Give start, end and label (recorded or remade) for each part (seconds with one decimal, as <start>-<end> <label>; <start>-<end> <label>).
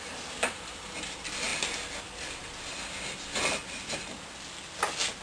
0.0-5.2 recorded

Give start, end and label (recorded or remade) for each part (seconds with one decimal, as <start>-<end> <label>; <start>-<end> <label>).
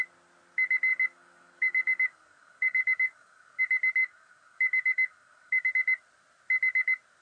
0.0-0.9 recorded; 0.9-3.6 remade; 3.6-4.0 recorded; 4.0-5.7 remade; 5.7-7.2 recorded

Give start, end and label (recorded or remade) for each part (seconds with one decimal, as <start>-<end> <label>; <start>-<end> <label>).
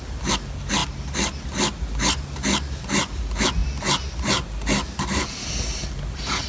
0.0-6.5 recorded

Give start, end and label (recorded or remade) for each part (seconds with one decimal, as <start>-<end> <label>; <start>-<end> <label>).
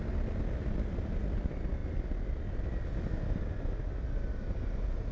0.0-5.1 recorded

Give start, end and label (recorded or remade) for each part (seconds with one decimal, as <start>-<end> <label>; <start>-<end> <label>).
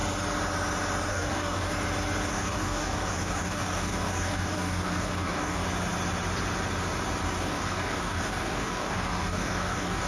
0.0-1.1 recorded; 1.1-1.7 remade; 1.7-2.3 recorded; 2.3-5.6 remade; 5.6-7.4 recorded; 7.4-10.1 remade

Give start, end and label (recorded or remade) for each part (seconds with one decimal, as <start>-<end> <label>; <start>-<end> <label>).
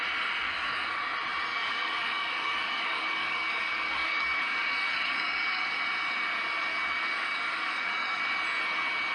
0.0-0.4 recorded; 0.4-1.0 remade; 1.0-1.5 recorded; 1.5-5.8 remade; 5.8-6.7 recorded; 6.7-8.2 remade; 8.2-9.1 recorded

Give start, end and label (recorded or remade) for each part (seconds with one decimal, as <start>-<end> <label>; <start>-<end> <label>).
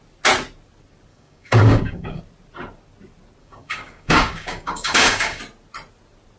0.0-1.1 recorded; 1.1-2.2 remade; 2.2-3.4 recorded; 3.4-5.4 remade; 5.4-6.4 recorded